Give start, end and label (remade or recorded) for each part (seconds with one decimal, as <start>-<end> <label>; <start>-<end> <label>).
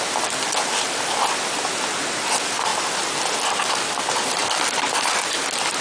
0.0-5.8 recorded